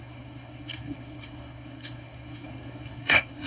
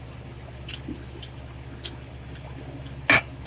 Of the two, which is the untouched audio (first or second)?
second